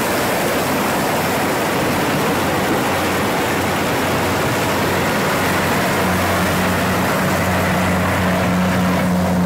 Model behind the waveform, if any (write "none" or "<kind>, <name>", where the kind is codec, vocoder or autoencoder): none